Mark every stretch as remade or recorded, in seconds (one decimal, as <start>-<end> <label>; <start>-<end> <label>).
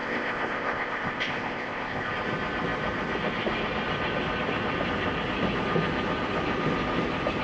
0.0-2.1 remade; 2.1-7.4 recorded